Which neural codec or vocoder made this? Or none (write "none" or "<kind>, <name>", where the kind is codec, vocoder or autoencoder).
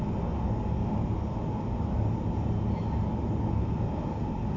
none